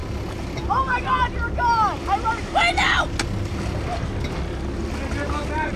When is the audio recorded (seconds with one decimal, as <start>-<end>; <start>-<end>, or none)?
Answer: 0.0-5.8